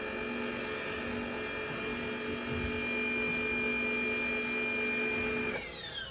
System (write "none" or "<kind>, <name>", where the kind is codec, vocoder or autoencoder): none